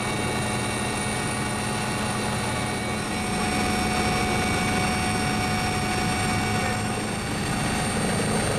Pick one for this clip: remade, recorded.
recorded